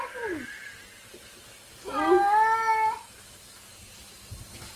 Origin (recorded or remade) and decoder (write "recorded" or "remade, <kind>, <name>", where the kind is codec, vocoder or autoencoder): recorded